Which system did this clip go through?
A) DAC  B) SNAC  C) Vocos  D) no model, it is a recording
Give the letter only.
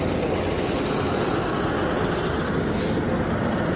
D